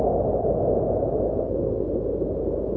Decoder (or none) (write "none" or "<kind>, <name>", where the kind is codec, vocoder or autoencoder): none